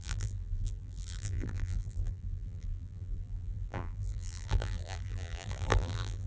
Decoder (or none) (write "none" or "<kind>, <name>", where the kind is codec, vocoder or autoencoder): vocoder, BigVGAN v2